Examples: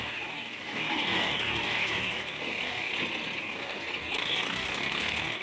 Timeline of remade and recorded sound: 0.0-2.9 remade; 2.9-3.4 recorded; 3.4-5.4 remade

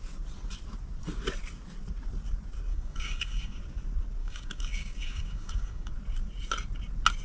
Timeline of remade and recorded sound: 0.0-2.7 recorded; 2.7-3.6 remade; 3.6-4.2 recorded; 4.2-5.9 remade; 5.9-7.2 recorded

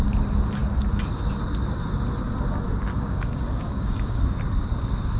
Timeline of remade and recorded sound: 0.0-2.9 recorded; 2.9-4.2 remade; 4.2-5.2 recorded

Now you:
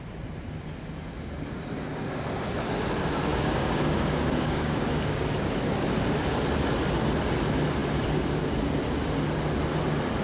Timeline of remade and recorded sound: 0.0-3.3 recorded; 3.3-5.2 remade; 5.2-10.2 recorded